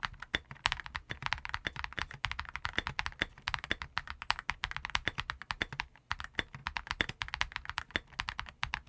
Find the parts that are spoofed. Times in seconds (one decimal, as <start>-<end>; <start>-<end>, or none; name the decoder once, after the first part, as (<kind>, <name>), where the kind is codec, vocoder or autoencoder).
none